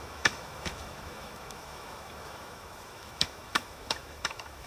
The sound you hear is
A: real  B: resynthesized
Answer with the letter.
B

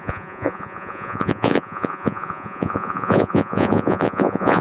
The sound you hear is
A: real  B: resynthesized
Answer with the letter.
B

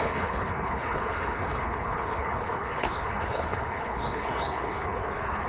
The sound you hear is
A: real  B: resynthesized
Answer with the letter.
B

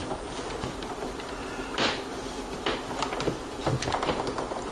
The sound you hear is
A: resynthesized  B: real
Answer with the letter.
A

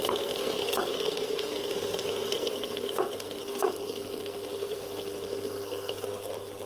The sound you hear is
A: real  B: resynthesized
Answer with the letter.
B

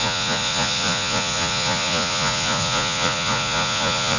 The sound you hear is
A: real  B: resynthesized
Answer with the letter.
B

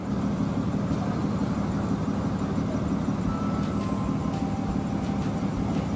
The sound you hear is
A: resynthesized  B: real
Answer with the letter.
B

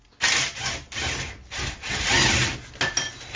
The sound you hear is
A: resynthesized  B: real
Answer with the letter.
B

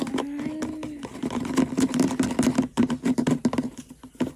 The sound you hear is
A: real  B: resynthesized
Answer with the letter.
A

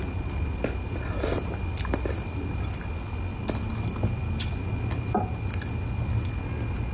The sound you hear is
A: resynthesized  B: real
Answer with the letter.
B